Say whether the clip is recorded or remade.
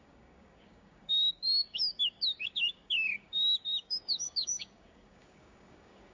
remade